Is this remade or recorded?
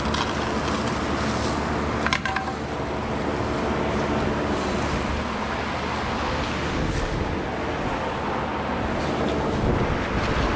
recorded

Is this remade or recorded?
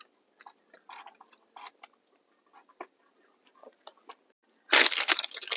recorded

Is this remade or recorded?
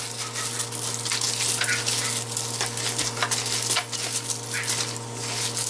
recorded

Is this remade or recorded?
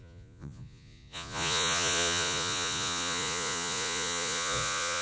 remade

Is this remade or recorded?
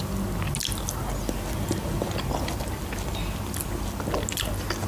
recorded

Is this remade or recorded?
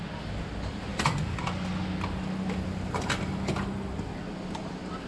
recorded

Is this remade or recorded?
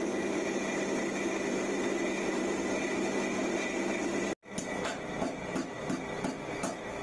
recorded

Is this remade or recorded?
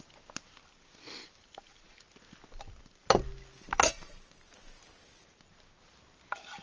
recorded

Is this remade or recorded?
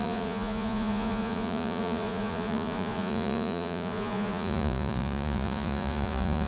remade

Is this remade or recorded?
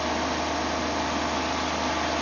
recorded